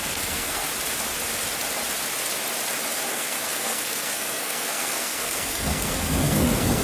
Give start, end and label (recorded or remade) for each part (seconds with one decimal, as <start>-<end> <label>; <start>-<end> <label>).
0.0-0.7 remade; 0.7-3.1 recorded; 3.1-6.8 remade

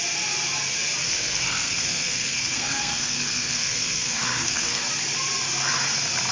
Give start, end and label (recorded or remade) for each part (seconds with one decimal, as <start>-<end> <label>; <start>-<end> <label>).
0.0-1.0 recorded; 1.0-4.8 remade; 4.8-6.3 recorded

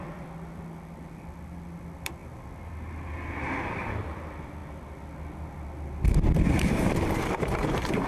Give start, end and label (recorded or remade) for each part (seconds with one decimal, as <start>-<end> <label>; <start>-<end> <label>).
0.0-2.2 remade; 2.2-4.0 recorded; 4.0-4.6 remade; 4.6-6.4 recorded; 6.4-8.1 remade

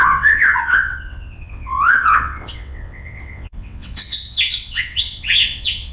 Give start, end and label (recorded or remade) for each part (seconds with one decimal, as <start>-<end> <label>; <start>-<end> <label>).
0.0-5.9 remade

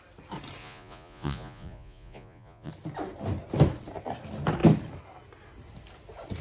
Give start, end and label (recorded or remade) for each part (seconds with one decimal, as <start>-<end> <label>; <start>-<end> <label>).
0.0-0.6 recorded; 0.6-2.7 remade; 2.7-6.4 recorded